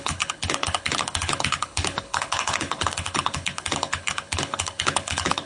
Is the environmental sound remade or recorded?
remade